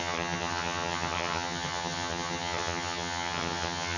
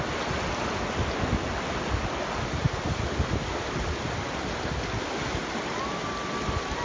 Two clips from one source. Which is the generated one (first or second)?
first